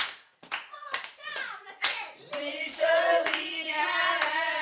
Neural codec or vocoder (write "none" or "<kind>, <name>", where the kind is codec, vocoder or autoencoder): vocoder, Vocos